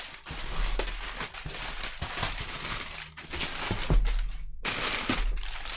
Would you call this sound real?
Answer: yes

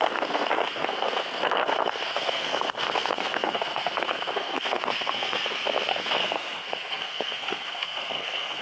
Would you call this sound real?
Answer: no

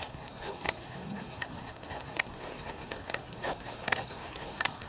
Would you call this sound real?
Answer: no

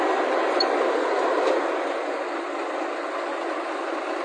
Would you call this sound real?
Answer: yes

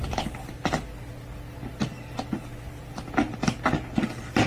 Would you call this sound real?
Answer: yes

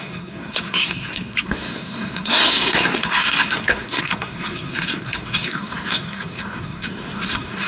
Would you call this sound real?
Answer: no